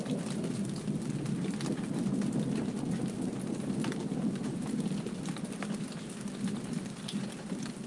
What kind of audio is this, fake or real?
real